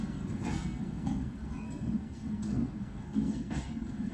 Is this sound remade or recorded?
remade